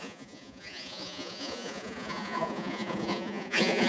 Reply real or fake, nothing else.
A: fake